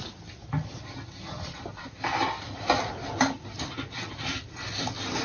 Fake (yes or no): no